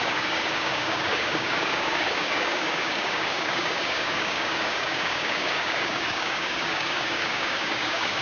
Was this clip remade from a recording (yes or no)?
yes